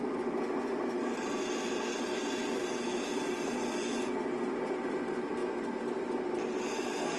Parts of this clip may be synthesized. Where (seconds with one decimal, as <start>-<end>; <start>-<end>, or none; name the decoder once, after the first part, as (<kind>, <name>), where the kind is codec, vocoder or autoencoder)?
none